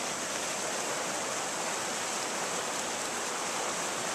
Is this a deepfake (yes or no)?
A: no